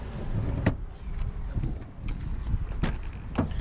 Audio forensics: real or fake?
real